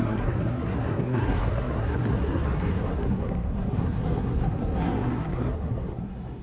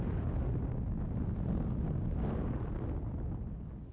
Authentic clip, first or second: second